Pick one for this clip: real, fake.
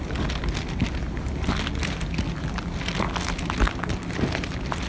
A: real